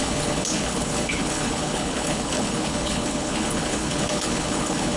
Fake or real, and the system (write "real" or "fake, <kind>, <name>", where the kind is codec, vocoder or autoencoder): fake, codec, HILCodec